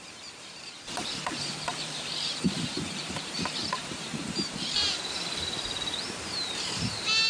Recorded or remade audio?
remade